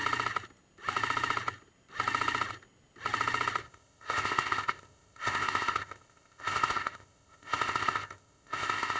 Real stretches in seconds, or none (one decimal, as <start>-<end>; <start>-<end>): 0.0-3.6